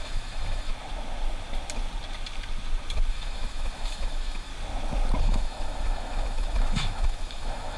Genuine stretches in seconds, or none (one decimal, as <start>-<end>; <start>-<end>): 0.7-3.1; 4.5-5.2